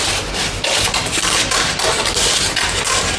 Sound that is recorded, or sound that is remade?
recorded